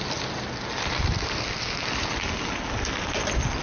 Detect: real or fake real